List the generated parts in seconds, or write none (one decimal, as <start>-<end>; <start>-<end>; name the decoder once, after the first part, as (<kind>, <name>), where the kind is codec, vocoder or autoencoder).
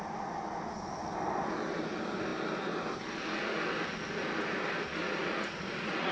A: 5.0-6.1 (vocoder, Vocos)